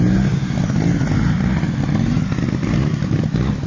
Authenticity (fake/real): real